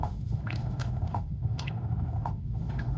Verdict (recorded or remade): remade